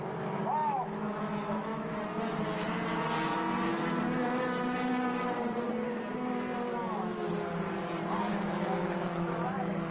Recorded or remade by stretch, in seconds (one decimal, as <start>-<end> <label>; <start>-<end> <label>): 0.0-0.6 recorded; 0.6-2.0 remade; 2.0-6.8 recorded; 6.8-7.3 remade; 7.3-8.3 recorded; 8.3-9.9 remade